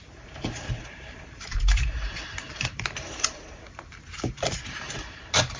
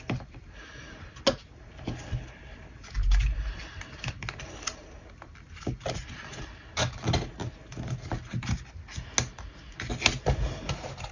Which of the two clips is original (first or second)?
second